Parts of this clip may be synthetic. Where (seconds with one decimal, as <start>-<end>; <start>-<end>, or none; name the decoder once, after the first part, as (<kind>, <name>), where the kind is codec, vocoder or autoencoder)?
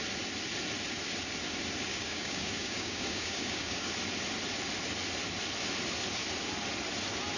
1.9-3.9 (codec, DAC)